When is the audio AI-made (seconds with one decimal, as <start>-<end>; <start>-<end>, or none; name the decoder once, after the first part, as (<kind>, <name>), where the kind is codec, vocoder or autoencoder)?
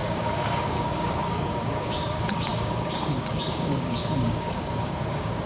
0.0-5.5 (codec, DAC)